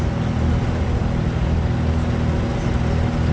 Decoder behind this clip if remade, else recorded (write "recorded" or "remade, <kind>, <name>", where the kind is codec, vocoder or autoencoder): recorded